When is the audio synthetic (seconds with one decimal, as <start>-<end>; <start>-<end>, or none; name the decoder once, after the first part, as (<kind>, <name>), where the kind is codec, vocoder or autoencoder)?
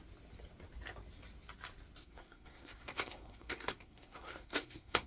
2.0-5.1 (codec, SNAC)